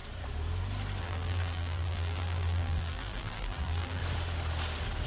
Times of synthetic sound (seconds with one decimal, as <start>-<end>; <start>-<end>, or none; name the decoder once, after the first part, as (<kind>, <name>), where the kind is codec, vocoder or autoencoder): 1.0-4.0 (vocoder, BigVGAN v2)